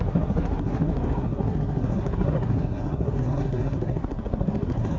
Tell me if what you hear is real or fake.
fake